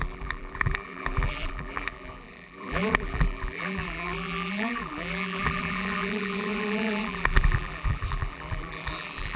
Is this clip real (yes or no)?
no